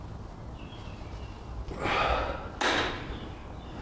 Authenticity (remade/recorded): recorded